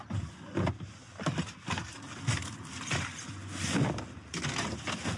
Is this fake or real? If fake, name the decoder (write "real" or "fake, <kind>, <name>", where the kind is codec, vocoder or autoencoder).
real